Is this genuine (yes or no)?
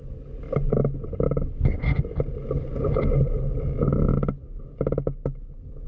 yes